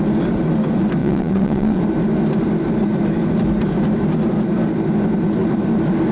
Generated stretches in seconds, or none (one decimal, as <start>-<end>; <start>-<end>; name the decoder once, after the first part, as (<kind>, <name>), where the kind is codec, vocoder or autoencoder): 1.0-1.8 (vocoder, WaveNeXt)